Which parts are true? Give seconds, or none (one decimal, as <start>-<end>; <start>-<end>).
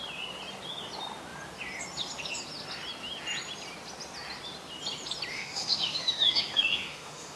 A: 0.0-5.3